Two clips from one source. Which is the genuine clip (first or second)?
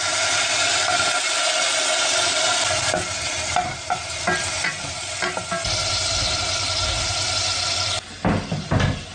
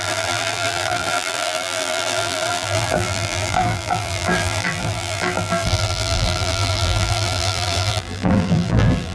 first